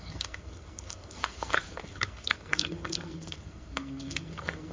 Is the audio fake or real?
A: fake